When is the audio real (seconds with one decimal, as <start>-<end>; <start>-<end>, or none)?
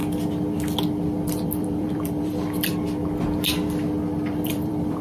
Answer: 0.0-1.3; 2.7-4.3